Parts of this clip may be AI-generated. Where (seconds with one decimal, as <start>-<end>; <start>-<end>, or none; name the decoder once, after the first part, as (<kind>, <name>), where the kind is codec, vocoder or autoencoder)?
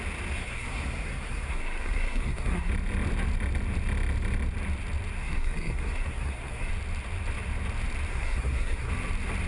0.4-2.7 (codec, SNAC); 5.2-6.7; 8.1-8.9